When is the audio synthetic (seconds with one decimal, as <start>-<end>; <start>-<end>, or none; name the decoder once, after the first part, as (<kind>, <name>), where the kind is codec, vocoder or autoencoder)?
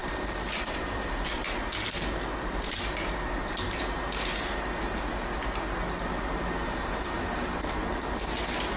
0.0-7.8 (vocoder, BigVGAN v2)